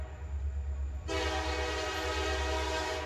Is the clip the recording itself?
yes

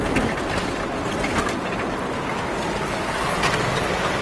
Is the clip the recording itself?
yes